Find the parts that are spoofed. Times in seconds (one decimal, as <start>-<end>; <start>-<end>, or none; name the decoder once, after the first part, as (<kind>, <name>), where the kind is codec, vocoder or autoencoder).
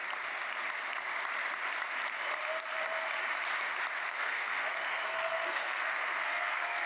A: 4.1-6.9 (codec, SNAC)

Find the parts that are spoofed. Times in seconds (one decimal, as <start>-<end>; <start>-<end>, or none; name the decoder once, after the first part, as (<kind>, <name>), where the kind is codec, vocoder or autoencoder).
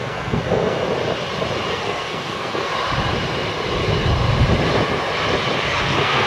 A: 0.0-0.8 (codec, SNAC); 1.7-2.7; 5.8-6.3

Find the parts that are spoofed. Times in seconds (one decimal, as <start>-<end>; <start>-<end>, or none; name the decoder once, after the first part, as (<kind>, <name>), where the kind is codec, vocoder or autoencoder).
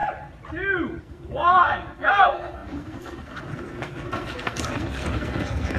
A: 1.0-5.8 (codec, SNAC)